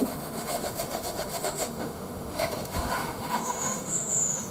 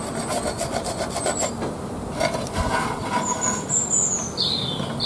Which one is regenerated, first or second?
first